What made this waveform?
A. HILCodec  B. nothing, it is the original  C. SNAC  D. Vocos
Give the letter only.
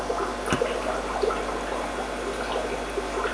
B